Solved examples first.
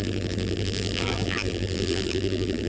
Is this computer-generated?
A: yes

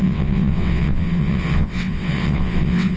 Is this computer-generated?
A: yes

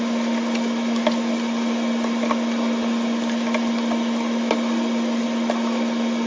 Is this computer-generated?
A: no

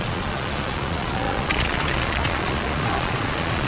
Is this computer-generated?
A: yes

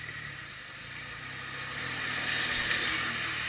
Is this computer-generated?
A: no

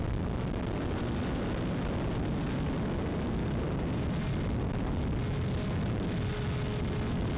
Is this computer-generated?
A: no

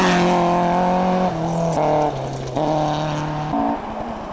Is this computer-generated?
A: no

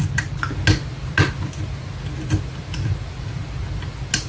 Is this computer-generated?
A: no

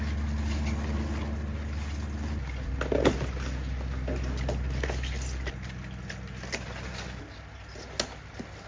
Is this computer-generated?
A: no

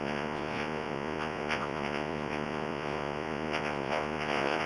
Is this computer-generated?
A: yes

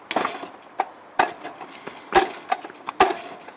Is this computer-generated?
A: no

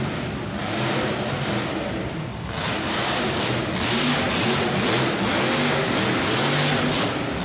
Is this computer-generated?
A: no